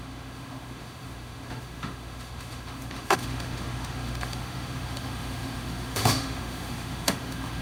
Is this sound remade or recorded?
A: remade